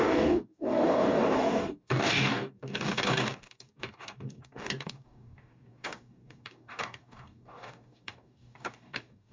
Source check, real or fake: fake